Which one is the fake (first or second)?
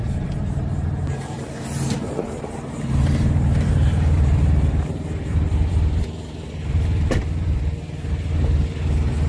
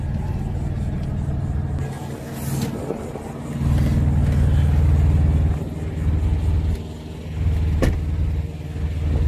first